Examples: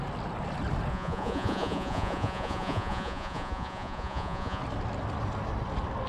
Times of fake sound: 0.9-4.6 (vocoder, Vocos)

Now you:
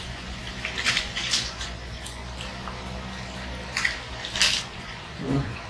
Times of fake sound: 0.0-0.4 (vocoder, Vocos); 0.9-2.2; 4.6-5.7

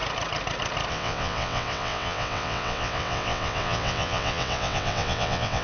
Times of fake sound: 0.9-5.6 (vocoder, WaveNeXt)

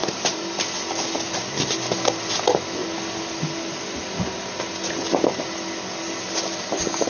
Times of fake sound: 0.0-0.6 (vocoder, BigVGAN v2)

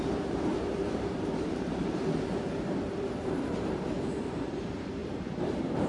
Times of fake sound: 0.0-5.9 (vocoder, BigVGAN v2)

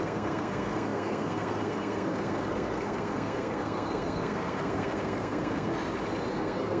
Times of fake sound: 0.0-5.7 (codec, SNAC); 6.3-6.8